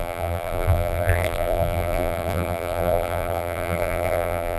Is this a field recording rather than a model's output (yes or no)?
no